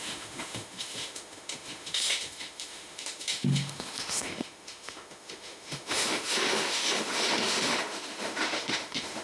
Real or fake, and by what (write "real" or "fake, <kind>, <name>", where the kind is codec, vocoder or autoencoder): fake, autoencoder, DAC-VAE